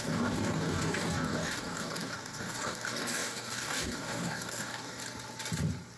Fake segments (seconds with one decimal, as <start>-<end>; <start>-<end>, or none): 0.0-5.0